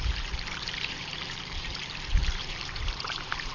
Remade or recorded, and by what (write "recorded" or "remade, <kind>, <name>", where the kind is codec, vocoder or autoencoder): remade, vocoder, BigVGAN v2